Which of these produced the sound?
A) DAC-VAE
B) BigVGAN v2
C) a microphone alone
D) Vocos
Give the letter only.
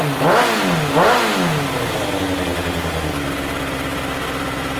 C